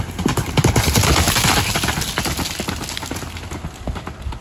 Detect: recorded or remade recorded